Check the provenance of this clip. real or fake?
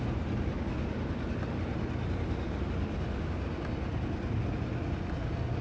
real